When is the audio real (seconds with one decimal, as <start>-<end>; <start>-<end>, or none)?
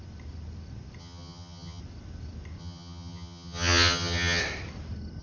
0.0-1.0; 1.8-2.6; 4.4-5.2